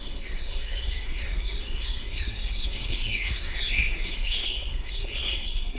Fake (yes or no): yes